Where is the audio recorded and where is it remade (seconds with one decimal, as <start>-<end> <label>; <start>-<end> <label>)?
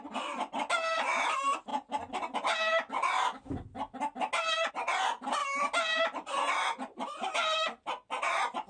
0.0-8.7 recorded